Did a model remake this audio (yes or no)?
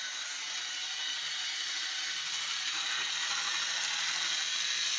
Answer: no